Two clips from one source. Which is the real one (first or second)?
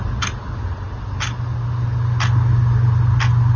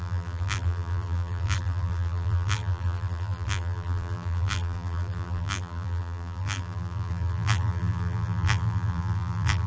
first